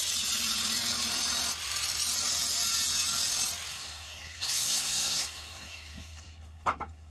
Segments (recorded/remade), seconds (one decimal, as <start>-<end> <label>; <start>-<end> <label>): 0.0-3.7 recorded; 3.7-7.1 remade